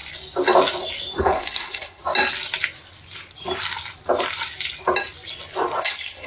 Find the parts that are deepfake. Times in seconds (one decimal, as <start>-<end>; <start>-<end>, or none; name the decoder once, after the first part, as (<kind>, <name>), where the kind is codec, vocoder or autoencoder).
1.2-2.0 (codec, HILCodec); 5.8-6.3